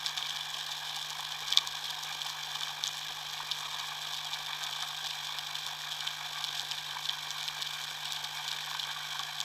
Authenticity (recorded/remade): recorded